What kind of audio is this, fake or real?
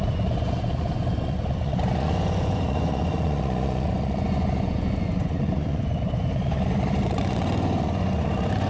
fake